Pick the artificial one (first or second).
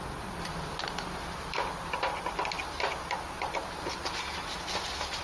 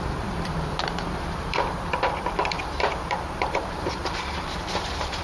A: second